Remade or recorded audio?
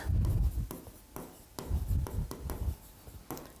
recorded